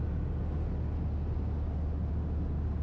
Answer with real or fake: real